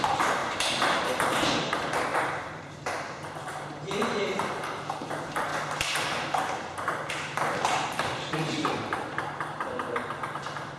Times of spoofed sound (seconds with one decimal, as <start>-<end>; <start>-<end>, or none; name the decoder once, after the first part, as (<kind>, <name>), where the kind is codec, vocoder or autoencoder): 0.0-5.5 (vocoder, BigVGAN v2); 7.1-10.8